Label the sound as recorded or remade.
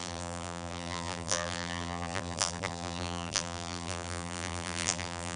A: remade